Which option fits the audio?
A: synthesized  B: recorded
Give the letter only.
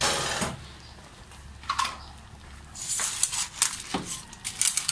B